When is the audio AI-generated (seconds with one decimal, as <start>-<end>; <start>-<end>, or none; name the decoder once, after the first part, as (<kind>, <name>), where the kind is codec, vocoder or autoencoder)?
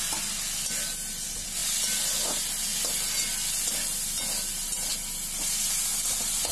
none